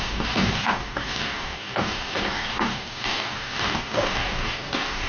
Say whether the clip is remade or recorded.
remade